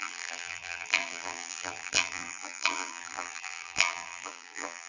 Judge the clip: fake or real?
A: fake